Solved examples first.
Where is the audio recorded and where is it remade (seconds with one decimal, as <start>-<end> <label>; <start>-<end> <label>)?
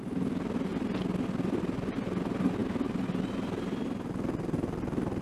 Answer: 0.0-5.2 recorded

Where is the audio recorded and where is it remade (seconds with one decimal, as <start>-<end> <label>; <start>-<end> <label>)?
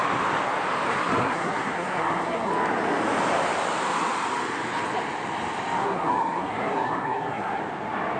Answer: 0.0-1.2 recorded; 1.2-2.5 remade; 2.5-5.8 recorded; 5.8-7.6 remade; 7.6-8.2 recorded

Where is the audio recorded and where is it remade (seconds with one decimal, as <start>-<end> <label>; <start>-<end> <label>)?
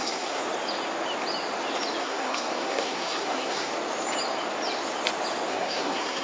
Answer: 0.0-0.4 remade; 0.4-2.0 recorded; 2.0-3.7 remade; 3.7-5.5 recorded; 5.5-6.2 remade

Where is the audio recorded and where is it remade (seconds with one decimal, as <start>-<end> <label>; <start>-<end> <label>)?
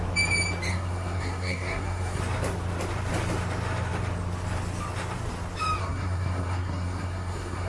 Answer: 0.0-0.7 recorded; 0.7-2.2 remade; 2.2-5.8 recorded; 5.8-7.7 remade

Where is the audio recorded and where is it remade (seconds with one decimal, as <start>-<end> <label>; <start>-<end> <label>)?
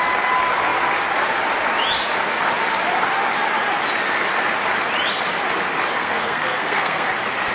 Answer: 0.0-6.0 recorded; 6.0-7.1 remade; 7.1-7.5 recorded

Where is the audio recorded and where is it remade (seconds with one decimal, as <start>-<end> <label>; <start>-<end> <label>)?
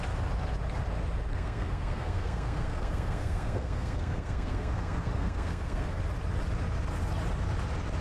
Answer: 0.0-1.3 recorded; 1.3-6.0 remade; 6.0-8.0 recorded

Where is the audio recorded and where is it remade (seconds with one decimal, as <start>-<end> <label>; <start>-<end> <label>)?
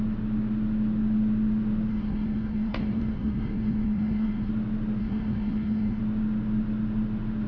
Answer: 0.0-1.9 recorded; 1.9-4.5 remade; 4.5-5.0 recorded; 5.0-6.0 remade; 6.0-7.5 recorded